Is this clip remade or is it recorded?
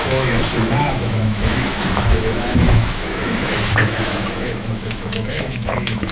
remade